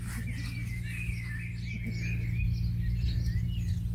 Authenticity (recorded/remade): recorded